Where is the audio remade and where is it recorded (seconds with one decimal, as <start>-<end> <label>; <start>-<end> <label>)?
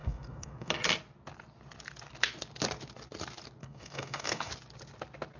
0.0-0.7 remade; 0.7-3.6 recorded; 3.6-4.5 remade; 4.5-5.4 recorded